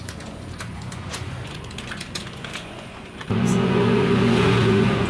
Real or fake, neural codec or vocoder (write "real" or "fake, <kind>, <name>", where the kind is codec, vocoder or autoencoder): fake, vocoder, Vocos